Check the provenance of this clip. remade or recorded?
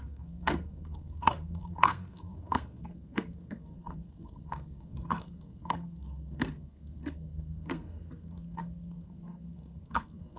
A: remade